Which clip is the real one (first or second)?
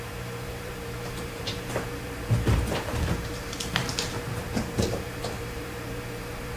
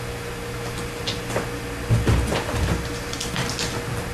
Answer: second